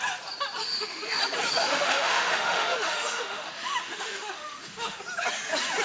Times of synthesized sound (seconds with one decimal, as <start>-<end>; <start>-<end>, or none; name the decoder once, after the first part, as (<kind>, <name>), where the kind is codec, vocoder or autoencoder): 0.6-1.2 (autoencoder, DAC-VAE); 1.6-5.0